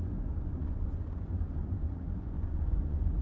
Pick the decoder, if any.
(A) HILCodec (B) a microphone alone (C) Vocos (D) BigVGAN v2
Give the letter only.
C